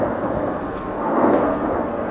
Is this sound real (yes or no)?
no